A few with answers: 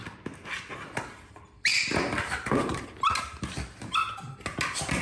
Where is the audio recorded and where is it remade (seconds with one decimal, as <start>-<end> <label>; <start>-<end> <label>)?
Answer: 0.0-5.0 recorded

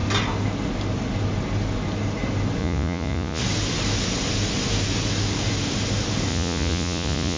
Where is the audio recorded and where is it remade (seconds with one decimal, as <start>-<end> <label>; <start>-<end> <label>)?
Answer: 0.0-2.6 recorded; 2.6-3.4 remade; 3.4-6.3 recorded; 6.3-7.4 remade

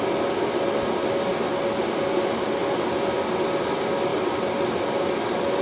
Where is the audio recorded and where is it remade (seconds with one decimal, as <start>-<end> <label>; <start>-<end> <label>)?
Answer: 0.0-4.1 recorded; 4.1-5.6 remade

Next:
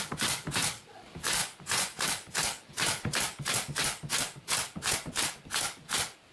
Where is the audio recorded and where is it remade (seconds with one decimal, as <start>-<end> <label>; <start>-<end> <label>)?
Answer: 0.0-1.4 recorded; 1.4-2.0 remade; 2.0-6.3 recorded

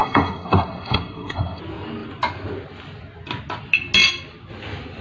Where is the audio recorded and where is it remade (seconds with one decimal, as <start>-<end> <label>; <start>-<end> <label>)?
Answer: 0.0-1.6 remade; 1.6-5.0 recorded

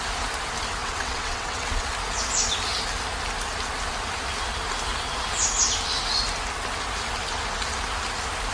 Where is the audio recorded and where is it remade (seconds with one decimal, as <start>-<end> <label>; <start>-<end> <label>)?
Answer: 0.0-0.8 recorded; 0.8-1.9 remade; 1.9-8.5 recorded